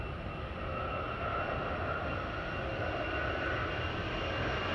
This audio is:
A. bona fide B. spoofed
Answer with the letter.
A